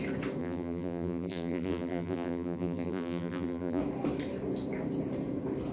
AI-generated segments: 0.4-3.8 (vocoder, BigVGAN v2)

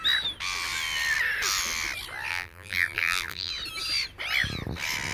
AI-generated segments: 2.3-3.5 (vocoder, BigVGAN v2)

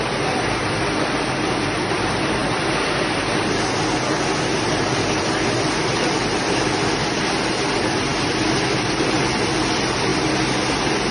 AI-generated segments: 0.0-2.4 (vocoder, BigVGAN v2); 4.6-10.1; 10.7-11.1